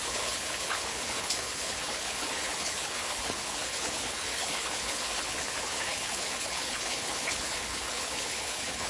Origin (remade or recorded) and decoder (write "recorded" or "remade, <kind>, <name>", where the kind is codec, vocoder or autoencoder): remade, codec, HILCodec